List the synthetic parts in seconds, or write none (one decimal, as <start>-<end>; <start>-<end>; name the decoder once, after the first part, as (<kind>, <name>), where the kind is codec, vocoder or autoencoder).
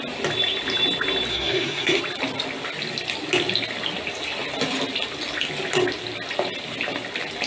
1.3-2.0 (codec, SNAC)